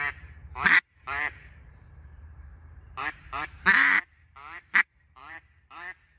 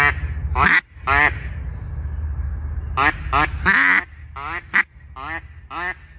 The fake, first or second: first